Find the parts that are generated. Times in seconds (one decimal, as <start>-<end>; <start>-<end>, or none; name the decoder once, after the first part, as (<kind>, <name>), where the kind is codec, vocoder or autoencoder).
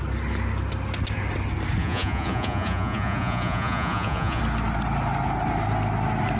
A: 1.8-4.4 (vocoder, Vocos)